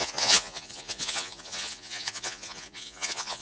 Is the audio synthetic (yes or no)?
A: yes